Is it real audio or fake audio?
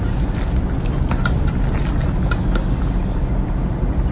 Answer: real